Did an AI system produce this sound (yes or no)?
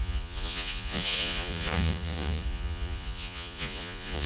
yes